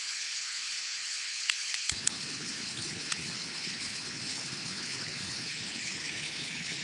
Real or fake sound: fake